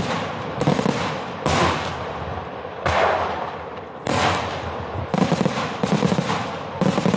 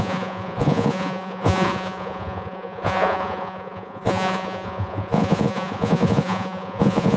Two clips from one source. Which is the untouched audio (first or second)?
first